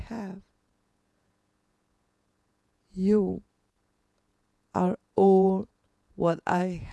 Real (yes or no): no